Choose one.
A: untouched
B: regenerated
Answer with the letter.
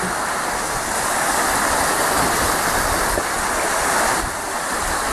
A